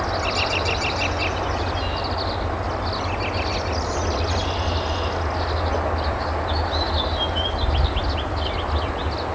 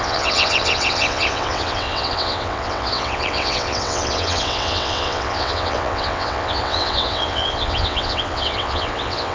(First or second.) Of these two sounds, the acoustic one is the first